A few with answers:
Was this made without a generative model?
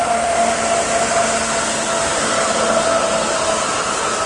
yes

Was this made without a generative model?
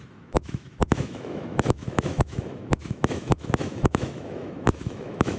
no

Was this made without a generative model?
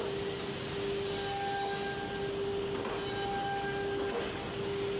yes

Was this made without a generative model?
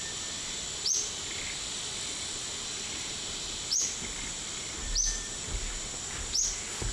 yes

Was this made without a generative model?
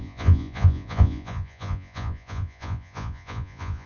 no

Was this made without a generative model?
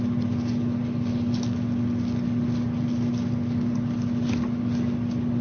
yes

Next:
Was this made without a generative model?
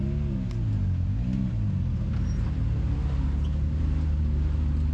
yes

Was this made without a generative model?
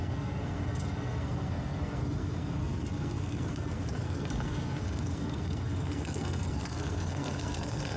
no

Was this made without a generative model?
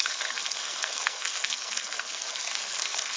no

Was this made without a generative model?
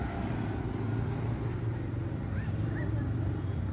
yes